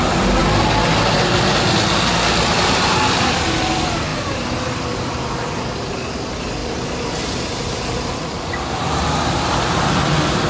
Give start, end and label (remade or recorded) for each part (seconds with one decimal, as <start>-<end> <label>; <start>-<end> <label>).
0.0-10.5 recorded